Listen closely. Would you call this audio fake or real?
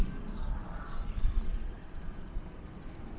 fake